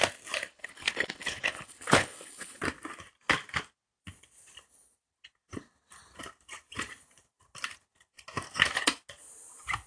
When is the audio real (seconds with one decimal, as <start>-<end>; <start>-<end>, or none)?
0.0-0.5; 2.6-9.9